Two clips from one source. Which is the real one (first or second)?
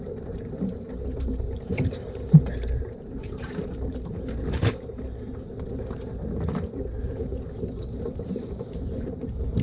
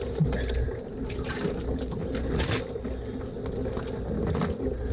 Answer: second